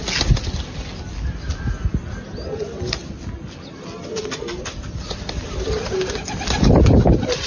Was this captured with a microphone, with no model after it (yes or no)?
yes